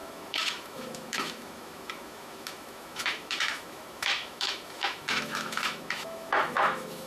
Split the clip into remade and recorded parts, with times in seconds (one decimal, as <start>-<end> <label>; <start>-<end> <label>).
0.0-7.1 remade